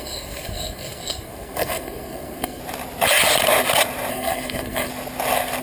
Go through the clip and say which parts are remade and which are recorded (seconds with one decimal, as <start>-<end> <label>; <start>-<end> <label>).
0.0-2.6 remade; 2.6-4.1 recorded; 4.1-4.9 remade; 4.9-5.6 recorded